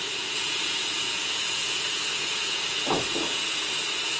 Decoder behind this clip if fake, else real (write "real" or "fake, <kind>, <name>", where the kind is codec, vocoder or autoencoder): fake, vocoder, Vocos